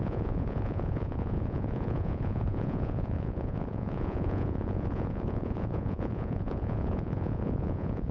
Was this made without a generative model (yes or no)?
no